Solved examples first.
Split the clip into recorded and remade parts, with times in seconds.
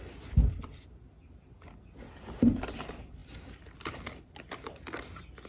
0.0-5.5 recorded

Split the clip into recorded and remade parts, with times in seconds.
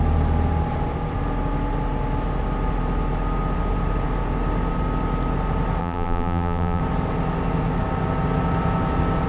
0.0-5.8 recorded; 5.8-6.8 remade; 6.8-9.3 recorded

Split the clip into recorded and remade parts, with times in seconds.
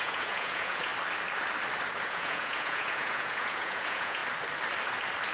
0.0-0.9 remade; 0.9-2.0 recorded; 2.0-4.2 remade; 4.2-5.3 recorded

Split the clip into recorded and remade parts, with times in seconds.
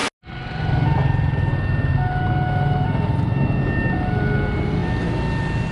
0.0-5.7 recorded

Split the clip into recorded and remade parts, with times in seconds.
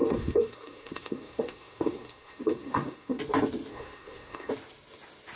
0.0-3.2 remade; 3.2-3.7 recorded; 3.7-4.5 remade; 4.5-5.3 recorded